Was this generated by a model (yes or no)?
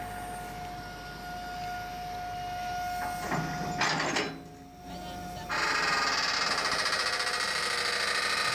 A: no